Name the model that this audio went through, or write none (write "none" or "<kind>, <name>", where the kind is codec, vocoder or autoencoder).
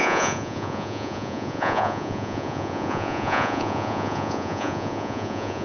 vocoder, Vocos